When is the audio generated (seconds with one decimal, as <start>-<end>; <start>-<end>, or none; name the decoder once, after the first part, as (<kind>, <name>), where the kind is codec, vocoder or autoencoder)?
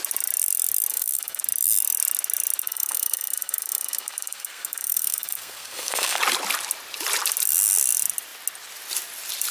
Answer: 0.9-1.4 (codec, SNAC); 2.6-6.2